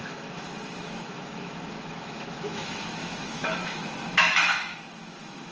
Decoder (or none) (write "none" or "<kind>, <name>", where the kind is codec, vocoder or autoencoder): autoencoder, DAC-VAE